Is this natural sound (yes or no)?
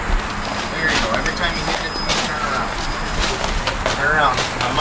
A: yes